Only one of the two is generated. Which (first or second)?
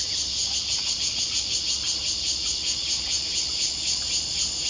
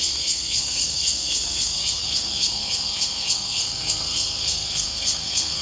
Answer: second